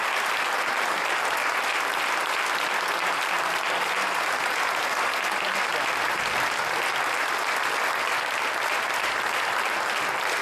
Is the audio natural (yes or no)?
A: yes